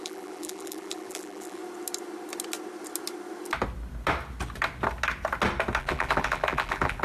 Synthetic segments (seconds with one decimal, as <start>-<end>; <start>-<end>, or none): 0.0-1.6; 5.8-7.0